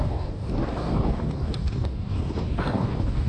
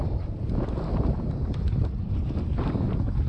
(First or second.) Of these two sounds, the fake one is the first